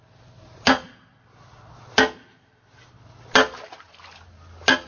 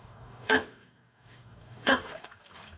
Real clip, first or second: first